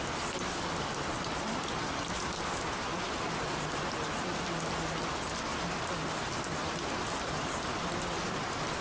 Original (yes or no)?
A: yes